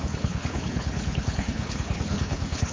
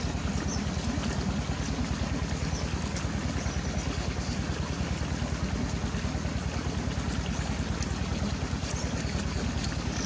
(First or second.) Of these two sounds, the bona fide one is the second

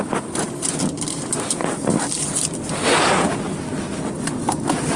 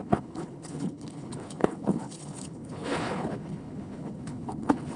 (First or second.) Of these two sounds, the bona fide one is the first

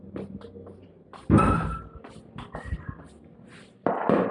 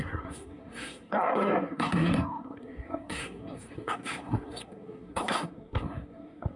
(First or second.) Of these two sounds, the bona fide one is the first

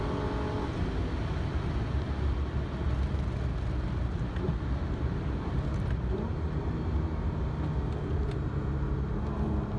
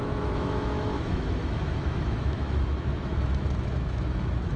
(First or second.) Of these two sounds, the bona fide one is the first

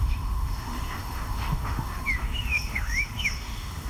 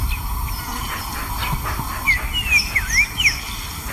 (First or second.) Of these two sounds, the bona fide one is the second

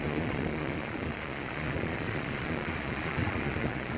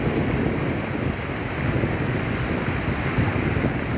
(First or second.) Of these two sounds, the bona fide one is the second